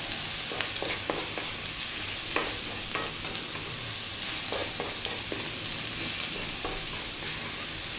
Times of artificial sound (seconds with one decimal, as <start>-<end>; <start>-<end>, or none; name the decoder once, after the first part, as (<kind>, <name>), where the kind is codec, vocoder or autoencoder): none